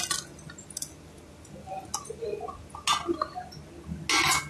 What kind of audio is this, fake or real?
real